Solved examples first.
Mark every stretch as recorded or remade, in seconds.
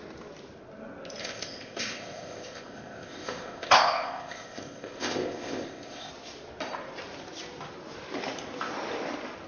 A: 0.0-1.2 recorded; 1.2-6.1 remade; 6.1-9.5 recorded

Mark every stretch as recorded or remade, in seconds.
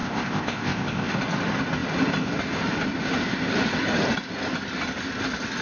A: 0.0-1.1 remade; 1.1-5.6 recorded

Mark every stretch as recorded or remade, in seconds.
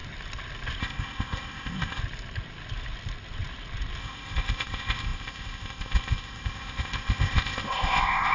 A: 0.0-0.8 recorded; 0.8-2.0 remade; 2.0-4.0 recorded; 4.0-8.3 remade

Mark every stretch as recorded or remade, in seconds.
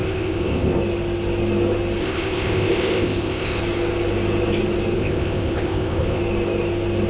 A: 0.0-0.8 remade; 0.8-2.0 recorded; 2.0-3.6 remade; 3.6-5.0 recorded; 5.0-6.2 remade; 6.2-7.1 recorded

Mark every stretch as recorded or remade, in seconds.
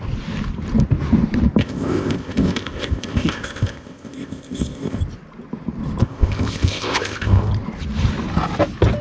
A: 0.0-1.6 recorded; 1.6-5.0 remade; 5.0-6.0 recorded; 6.0-7.5 remade; 7.5-9.0 recorded